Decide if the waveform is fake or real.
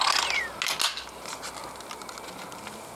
real